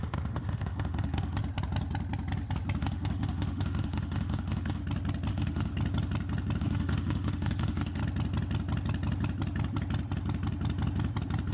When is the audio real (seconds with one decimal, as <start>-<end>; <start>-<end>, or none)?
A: 1.4-2.8; 4.8-5.3; 5.7-6.6; 8.0-11.5